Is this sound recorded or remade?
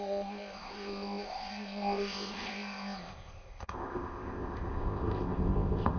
remade